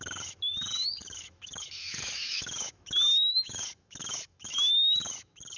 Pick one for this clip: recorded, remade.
remade